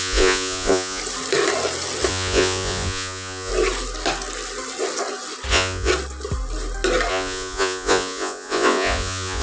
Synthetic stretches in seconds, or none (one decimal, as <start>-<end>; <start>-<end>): 0.0-1.0; 2.1-3.5; 5.5-5.9; 7.1-9.4